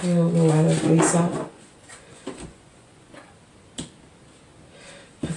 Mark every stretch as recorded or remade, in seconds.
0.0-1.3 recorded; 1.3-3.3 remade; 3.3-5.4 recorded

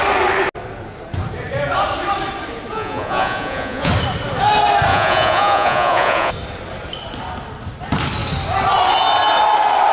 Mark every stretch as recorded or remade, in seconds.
0.0-2.7 recorded; 2.7-3.9 remade; 3.9-4.9 recorded; 4.9-6.3 remade; 6.3-9.9 recorded

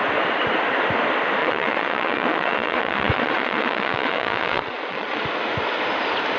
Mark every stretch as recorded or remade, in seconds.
0.0-1.4 recorded; 1.4-5.2 remade; 5.2-6.4 recorded

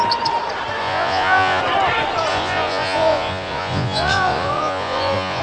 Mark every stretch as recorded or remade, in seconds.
0.0-0.8 recorded; 0.8-1.6 remade; 1.6-2.3 recorded; 2.3-5.4 remade

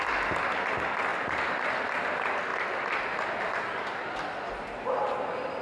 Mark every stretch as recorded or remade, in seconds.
0.0-5.6 recorded

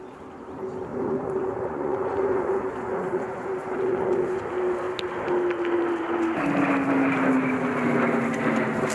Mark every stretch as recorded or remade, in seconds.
0.0-0.9 recorded; 0.9-4.4 remade; 4.4-8.9 recorded